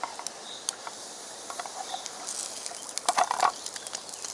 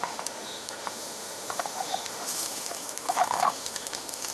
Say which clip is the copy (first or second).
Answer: second